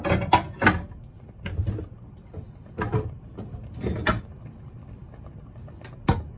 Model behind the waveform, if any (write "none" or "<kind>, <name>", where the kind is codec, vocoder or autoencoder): none